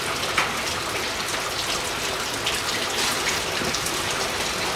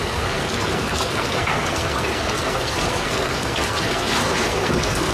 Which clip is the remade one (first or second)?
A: second